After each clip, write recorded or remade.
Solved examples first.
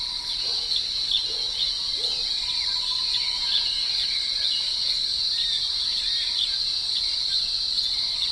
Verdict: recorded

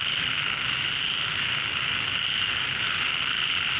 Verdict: recorded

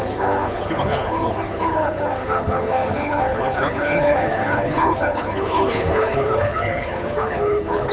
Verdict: remade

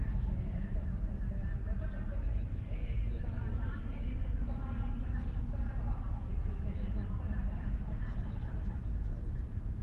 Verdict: recorded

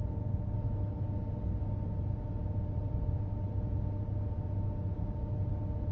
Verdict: recorded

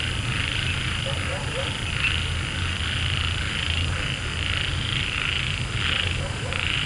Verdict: recorded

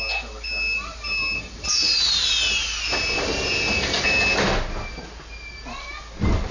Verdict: recorded